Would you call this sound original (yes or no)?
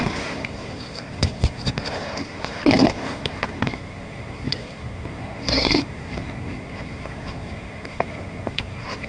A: no